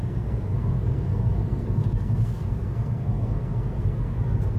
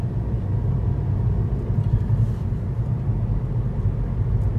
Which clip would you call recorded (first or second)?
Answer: second